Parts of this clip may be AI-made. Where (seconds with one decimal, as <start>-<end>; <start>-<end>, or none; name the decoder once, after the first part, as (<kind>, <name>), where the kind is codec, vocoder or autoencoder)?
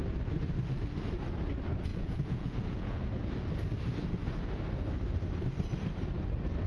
1.9-3.0 (vocoder, Vocos)